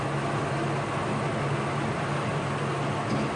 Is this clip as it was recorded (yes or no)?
yes